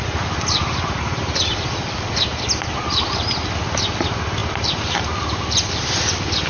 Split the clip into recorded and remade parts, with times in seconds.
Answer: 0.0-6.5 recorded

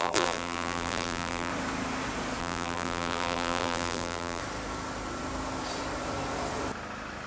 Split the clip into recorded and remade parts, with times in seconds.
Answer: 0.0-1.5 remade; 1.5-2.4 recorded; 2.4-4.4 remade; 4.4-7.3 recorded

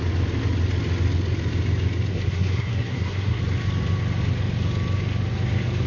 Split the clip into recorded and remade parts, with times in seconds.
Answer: 0.0-2.1 recorded; 2.1-3.4 remade; 3.4-5.9 recorded

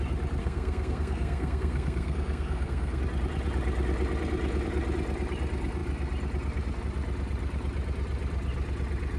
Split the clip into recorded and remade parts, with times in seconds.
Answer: 0.0-0.4 recorded; 0.4-3.0 remade; 3.0-9.2 recorded

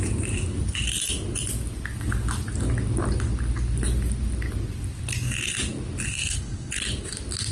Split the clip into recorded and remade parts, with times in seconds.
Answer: 0.0-6.2 recorded; 6.2-6.8 remade; 6.8-7.5 recorded

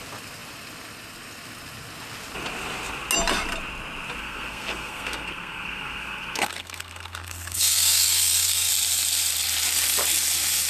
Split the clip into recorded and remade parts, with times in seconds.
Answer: 0.0-4.2 recorded; 4.2-8.7 remade; 8.7-10.7 recorded